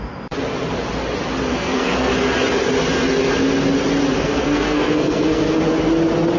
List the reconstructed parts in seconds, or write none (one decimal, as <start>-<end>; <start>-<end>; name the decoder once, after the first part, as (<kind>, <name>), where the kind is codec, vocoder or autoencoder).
1.5-2.1 (codec, SNAC); 4.2-5.6